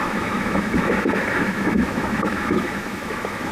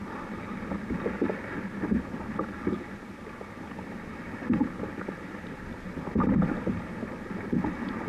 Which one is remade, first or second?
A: first